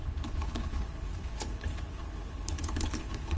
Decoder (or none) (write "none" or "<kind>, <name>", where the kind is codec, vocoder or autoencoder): codec, HILCodec